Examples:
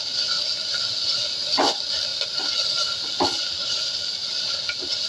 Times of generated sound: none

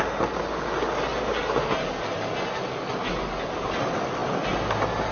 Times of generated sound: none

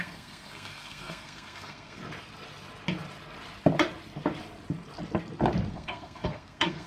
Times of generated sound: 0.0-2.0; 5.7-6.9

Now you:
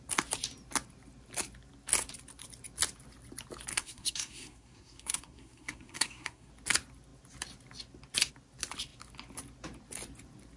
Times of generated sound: 3.7-6.5